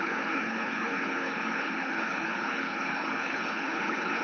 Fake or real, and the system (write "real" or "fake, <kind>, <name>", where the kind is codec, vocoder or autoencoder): fake, codec, HILCodec